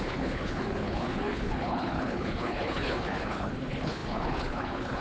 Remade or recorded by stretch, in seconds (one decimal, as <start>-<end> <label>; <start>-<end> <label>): 0.0-5.0 remade